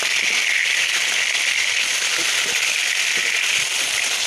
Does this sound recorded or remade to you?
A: recorded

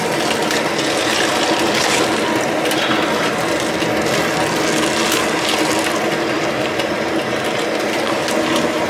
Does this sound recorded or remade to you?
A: recorded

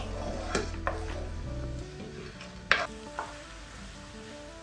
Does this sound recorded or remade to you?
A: recorded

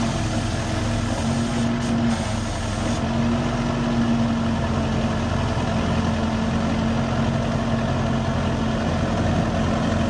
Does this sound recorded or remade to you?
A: recorded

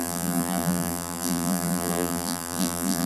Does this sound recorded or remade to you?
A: remade